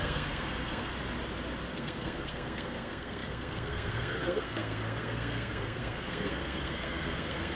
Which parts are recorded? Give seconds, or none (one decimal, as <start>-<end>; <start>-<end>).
0.9-1.7